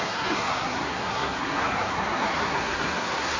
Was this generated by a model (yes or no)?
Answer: yes